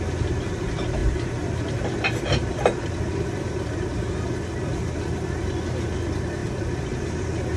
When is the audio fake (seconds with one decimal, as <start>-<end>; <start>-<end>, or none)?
1.0-3.7; 4.7-5.5; 6.4-7.6